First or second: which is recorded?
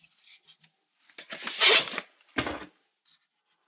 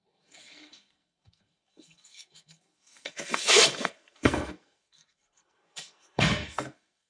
first